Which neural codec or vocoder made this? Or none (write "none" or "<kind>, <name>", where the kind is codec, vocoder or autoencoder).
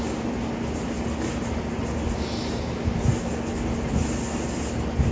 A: none